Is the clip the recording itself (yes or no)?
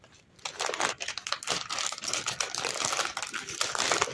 yes